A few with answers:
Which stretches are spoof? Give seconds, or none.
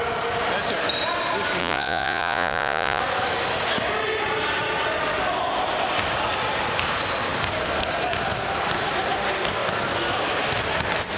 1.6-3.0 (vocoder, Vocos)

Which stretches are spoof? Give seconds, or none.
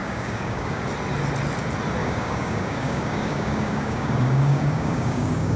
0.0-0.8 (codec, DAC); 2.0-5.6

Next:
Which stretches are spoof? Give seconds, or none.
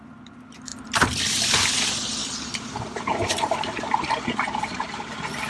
2.2-5.5 (vocoder, BigVGAN v2)